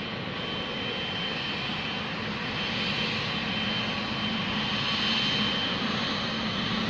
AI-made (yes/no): no